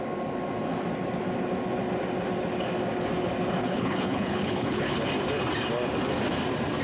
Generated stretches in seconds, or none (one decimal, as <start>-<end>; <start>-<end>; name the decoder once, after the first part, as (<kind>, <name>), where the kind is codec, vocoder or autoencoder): 3.6-5.1 (codec, HILCodec)